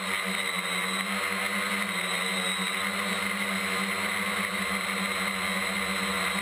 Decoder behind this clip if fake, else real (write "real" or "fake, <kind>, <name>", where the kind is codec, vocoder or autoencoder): real